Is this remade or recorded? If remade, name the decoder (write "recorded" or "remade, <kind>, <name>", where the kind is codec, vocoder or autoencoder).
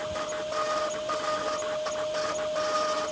recorded